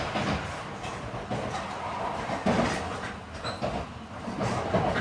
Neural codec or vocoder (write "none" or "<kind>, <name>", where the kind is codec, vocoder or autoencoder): none